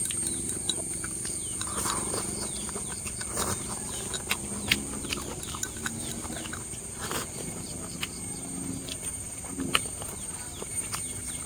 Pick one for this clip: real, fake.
real